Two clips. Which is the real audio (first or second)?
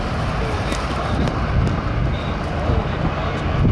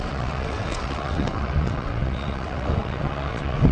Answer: first